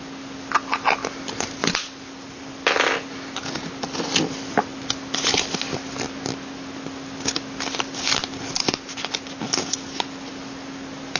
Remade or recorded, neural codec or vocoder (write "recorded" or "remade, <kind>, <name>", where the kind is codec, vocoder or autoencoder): recorded